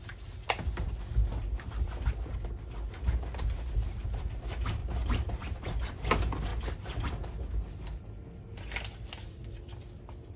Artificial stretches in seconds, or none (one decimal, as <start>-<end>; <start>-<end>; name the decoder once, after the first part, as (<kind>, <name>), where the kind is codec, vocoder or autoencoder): none